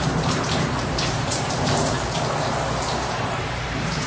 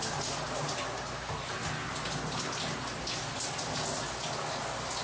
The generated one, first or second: first